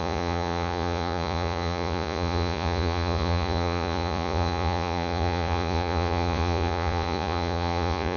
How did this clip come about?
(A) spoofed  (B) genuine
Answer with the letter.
A